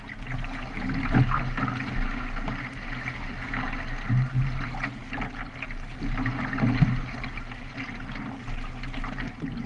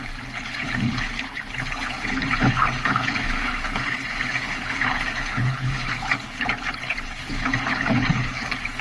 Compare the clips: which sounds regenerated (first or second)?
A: second